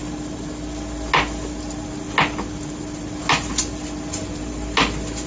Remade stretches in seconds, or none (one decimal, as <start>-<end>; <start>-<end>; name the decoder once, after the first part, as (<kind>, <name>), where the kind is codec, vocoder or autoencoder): none